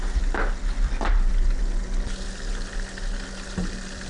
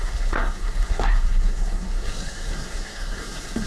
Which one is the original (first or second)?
first